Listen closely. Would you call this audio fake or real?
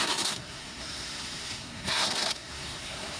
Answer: fake